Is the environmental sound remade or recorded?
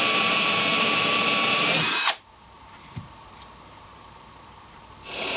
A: remade